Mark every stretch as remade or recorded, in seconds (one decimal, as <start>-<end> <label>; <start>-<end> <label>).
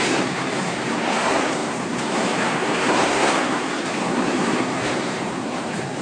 0.0-6.0 remade